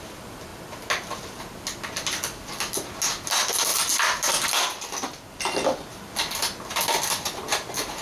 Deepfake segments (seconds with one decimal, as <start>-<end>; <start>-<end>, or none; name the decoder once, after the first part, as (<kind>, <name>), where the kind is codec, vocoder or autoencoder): 3.7-4.3 (vocoder, BigVGAN v2)